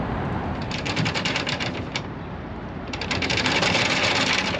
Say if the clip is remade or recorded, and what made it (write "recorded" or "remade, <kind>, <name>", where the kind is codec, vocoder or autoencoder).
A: remade, vocoder, BigVGAN v2